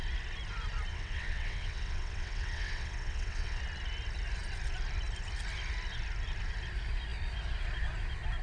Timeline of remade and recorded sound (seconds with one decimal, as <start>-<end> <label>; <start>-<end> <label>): 0.0-0.9 recorded; 0.9-3.6 remade; 3.6-8.4 recorded